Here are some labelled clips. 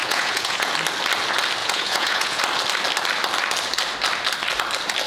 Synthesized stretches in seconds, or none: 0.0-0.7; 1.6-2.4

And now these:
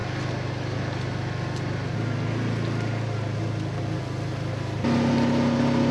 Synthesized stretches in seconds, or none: none

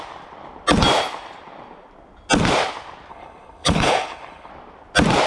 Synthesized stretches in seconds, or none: 3.1-4.5

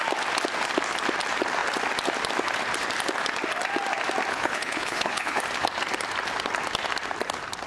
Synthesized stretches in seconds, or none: 4.3-5.4

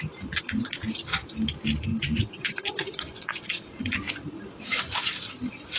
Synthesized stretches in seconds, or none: 1.9-3.9

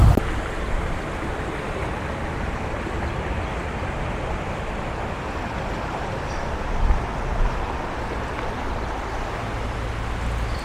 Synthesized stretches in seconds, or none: none

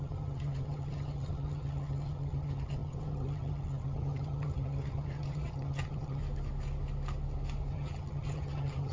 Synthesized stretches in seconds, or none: 0.0-6.2; 7.7-8.9

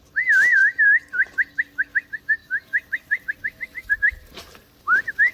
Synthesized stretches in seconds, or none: 0.0-5.3